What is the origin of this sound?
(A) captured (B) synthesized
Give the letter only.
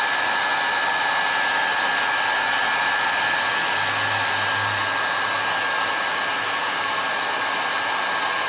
A